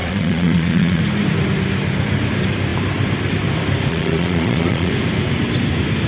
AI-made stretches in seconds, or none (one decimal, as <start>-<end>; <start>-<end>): 0.0-1.0; 3.9-4.9